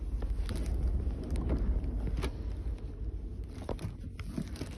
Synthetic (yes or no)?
no